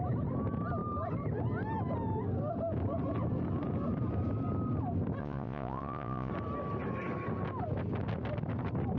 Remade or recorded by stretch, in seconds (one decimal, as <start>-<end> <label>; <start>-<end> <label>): 0.0-5.2 recorded; 5.2-6.3 remade; 6.3-9.0 recorded